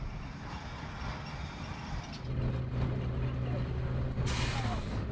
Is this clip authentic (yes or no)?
yes